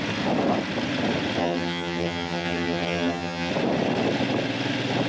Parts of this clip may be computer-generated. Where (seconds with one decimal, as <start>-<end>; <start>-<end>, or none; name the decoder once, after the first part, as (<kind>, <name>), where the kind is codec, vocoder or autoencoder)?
1.4-3.5 (vocoder, HiFi-GAN)